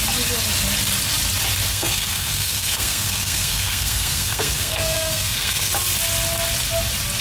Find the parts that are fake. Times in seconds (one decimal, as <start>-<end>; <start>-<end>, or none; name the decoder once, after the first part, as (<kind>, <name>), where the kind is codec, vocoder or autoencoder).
1.7-5.7 (codec, SNAC)